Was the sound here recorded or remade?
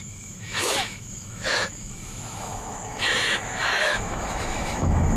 remade